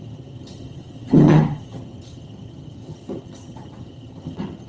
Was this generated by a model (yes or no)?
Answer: yes